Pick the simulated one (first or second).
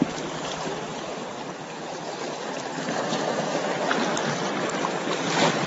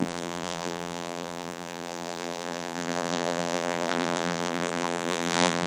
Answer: second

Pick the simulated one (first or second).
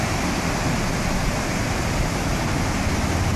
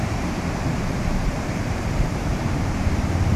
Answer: second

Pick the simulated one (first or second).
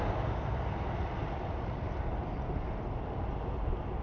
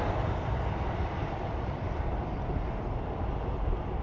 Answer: second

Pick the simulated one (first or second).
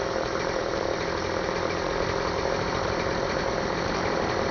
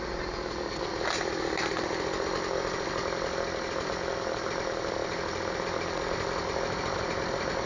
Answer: first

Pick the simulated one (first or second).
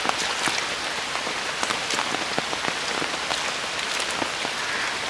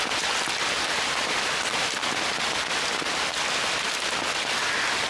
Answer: second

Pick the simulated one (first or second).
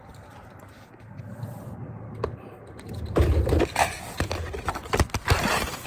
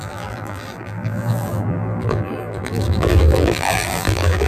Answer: second